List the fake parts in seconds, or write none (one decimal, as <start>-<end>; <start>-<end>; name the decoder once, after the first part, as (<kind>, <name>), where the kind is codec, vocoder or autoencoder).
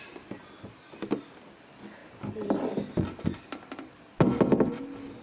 none